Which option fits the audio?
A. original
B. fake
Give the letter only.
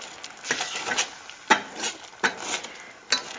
A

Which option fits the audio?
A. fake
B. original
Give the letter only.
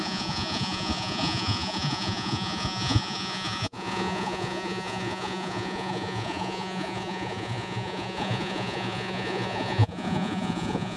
A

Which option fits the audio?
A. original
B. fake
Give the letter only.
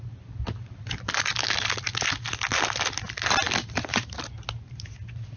A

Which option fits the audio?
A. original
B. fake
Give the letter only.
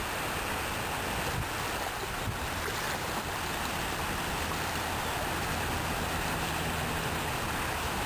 A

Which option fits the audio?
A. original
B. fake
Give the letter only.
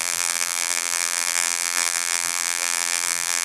B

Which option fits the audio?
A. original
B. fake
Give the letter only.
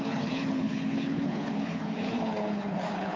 B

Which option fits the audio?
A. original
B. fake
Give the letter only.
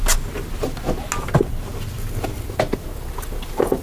A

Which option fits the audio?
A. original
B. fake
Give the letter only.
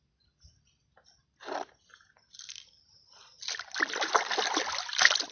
A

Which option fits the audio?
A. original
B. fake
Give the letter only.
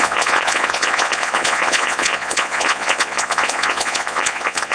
B